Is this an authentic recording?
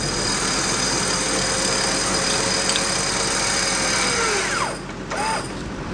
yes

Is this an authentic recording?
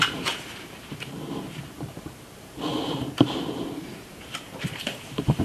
no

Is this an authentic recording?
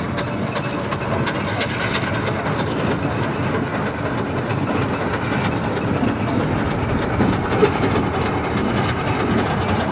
yes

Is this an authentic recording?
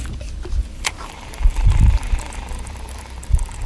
no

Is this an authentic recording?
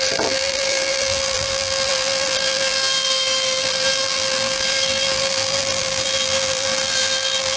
no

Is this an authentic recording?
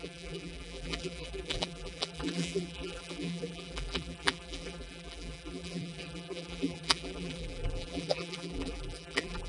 no